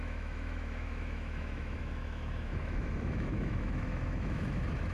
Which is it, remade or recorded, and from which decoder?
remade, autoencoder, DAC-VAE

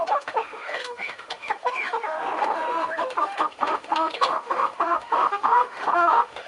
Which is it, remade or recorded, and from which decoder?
remade, autoencoder, DAC-VAE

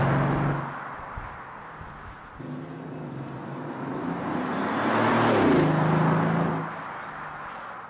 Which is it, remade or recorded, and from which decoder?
recorded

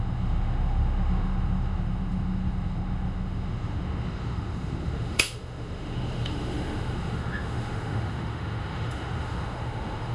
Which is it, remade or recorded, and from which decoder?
remade, autoencoder, DAC-VAE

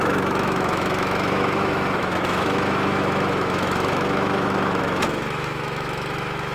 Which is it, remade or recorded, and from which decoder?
remade, autoencoder, DAC-VAE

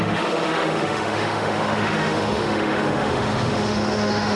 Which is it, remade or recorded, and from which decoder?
remade, autoencoder, DAC-VAE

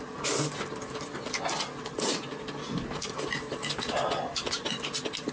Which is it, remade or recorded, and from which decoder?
recorded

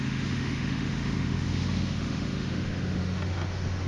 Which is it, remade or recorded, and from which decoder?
remade, autoencoder, DAC-VAE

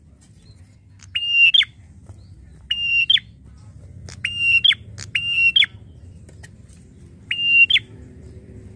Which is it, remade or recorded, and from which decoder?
recorded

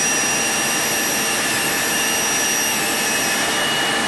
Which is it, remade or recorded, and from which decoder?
recorded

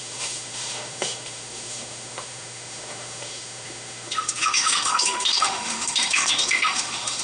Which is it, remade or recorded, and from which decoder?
remade, autoencoder, DAC-VAE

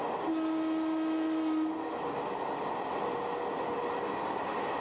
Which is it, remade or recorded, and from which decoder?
recorded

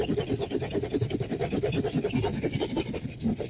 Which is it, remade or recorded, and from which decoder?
recorded